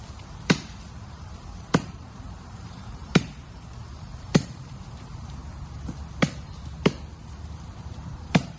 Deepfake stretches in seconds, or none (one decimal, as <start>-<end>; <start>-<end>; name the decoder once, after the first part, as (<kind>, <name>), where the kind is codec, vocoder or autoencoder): 0.0-5.4 (vocoder, BigVGAN v2); 7.8-8.6